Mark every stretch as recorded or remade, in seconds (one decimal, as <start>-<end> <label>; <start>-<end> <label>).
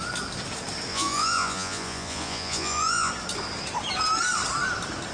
0.0-0.9 recorded; 0.9-3.1 remade; 3.1-5.1 recorded